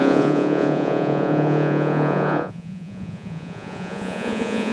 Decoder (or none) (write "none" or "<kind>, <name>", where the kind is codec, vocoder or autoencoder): vocoder, Vocos